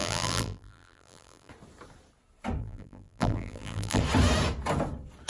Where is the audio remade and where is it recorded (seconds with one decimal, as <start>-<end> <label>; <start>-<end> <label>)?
0.0-1.5 remade; 1.5-2.6 recorded; 2.6-4.0 remade; 4.0-5.3 recorded